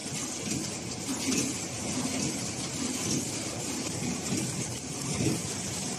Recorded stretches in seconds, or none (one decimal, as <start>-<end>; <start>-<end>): 0.0-2.2